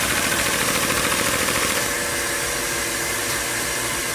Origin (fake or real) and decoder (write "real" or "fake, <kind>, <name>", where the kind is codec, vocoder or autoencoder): real